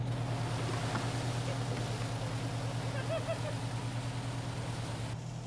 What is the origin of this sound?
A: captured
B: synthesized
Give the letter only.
A